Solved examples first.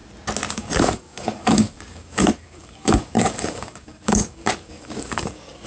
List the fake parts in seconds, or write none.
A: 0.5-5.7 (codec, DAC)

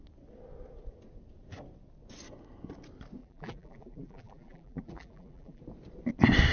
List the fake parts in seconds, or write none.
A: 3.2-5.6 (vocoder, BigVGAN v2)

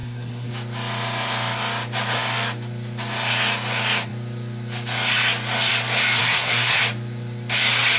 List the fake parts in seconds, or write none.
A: 0.0-0.5 (codec, SNAC); 6.2-6.8

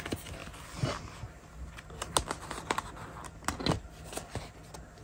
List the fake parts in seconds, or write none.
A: none